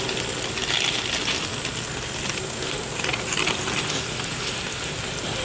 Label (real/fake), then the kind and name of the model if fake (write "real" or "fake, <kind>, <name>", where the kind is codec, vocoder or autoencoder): real